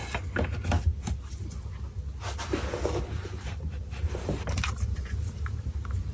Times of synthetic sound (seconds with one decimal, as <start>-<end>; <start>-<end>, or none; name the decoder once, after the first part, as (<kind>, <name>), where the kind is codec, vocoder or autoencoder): 3.0-6.1 (vocoder, BigVGAN v2)